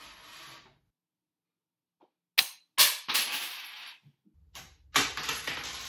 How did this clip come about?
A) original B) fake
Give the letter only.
A